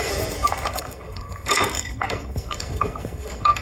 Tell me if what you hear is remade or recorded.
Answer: remade